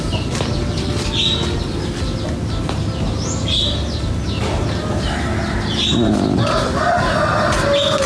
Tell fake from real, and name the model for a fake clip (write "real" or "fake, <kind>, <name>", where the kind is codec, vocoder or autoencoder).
real